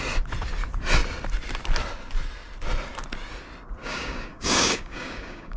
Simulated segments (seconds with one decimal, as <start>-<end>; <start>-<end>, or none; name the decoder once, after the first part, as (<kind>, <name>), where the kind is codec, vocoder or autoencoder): 3.8-5.6 (codec, DAC)